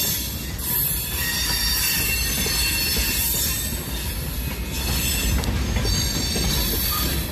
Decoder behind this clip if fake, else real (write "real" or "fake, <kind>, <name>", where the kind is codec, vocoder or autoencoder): real